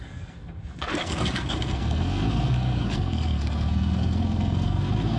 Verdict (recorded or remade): remade